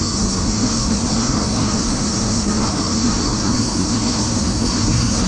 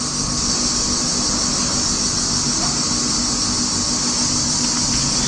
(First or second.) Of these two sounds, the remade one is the first